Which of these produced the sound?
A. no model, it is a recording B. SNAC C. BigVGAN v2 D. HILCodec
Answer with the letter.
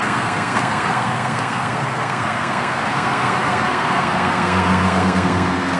B